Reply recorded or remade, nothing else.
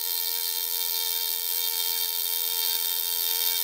remade